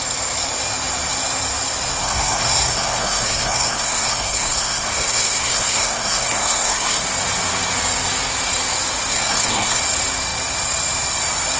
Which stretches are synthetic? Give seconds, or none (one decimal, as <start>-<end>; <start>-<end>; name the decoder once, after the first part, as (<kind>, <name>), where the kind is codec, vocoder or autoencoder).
2.0-7.0 (codec, SNAC); 9.1-9.8